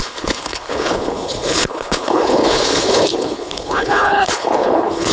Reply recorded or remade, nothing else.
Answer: remade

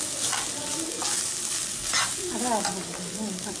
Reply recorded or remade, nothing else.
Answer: recorded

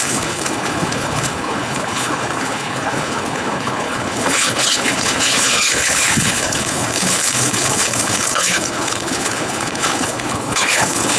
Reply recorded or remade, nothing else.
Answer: remade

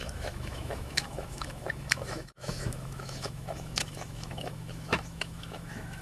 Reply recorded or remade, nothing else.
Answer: remade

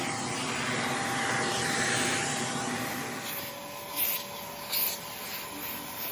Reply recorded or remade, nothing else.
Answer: recorded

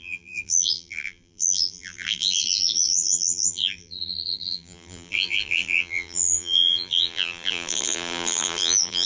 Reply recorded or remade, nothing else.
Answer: remade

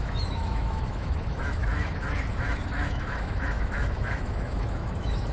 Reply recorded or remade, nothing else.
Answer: remade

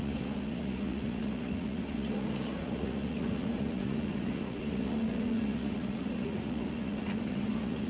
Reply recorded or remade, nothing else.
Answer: remade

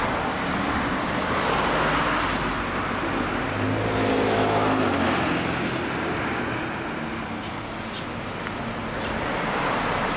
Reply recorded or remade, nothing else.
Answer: recorded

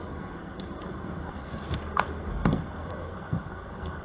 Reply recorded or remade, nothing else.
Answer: remade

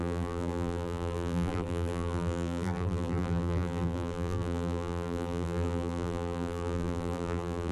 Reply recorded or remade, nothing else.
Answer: remade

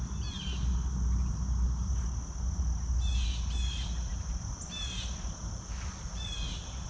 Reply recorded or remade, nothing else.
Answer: recorded